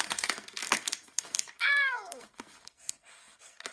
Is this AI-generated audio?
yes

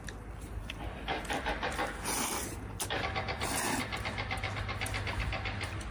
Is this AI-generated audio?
no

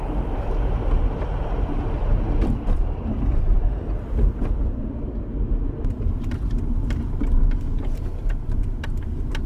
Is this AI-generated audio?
yes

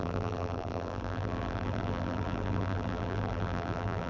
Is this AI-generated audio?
yes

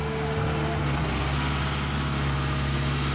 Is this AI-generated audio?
no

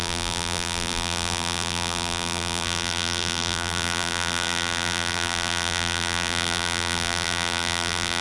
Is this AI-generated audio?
yes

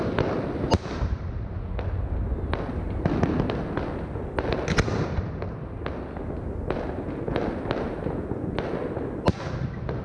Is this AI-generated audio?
no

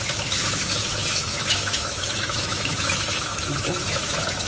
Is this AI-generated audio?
yes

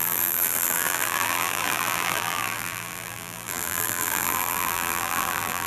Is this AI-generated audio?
yes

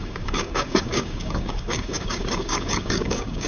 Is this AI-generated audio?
yes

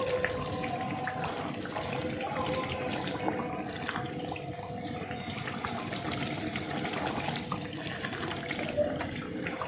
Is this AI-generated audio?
no